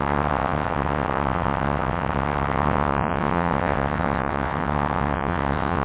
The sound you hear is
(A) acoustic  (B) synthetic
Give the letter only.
B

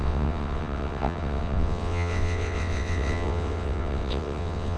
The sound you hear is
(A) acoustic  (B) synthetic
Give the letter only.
B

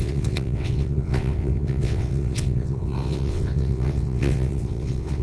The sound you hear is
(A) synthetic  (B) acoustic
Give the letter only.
A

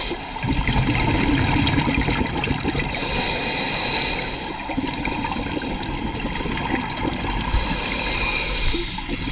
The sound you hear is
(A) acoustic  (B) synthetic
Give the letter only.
A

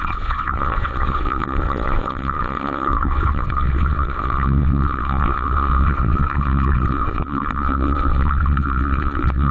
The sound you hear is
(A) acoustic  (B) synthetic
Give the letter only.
B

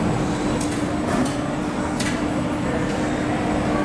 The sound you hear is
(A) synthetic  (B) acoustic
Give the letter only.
B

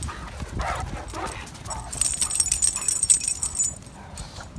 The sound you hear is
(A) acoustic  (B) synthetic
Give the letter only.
A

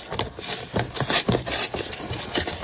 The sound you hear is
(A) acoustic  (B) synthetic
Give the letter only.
A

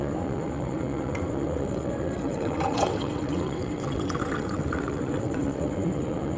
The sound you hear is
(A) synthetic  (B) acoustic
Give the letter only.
A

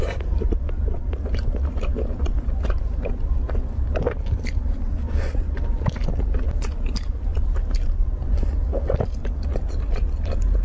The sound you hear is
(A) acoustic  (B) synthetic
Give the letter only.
A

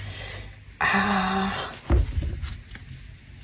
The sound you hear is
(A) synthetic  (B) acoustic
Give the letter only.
B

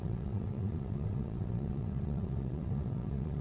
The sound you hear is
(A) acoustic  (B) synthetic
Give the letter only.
B